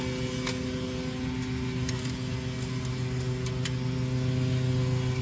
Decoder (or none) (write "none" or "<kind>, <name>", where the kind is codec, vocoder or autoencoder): none